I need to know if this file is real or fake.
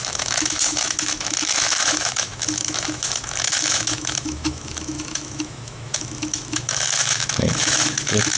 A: fake